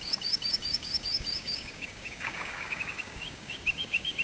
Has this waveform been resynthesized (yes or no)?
yes